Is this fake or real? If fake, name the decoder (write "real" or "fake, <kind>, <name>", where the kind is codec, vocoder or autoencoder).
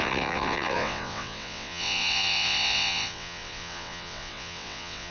fake, vocoder, WaveNeXt